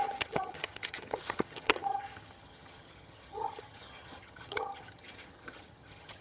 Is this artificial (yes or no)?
yes